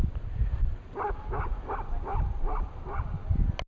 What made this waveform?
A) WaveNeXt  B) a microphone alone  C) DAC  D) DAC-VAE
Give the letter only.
B